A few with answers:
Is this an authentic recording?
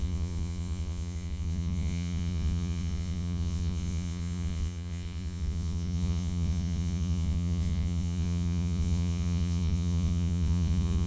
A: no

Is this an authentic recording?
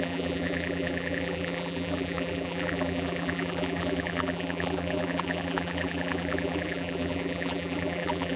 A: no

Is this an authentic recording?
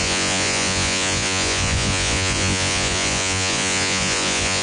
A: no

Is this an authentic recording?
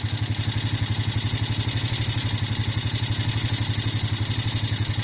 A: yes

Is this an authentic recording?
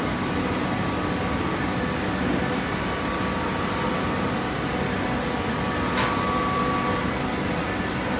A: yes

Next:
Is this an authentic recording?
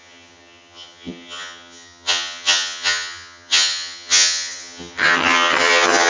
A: no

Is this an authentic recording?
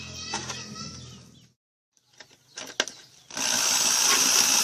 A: yes